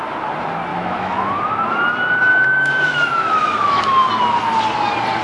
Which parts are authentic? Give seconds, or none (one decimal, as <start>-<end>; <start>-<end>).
0.0-0.7; 1.4-2.3; 4.1-5.2